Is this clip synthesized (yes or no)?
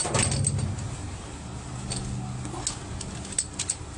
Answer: no